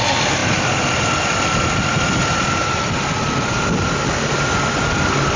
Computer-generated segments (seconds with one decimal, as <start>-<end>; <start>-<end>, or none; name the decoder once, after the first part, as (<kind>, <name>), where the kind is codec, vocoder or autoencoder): none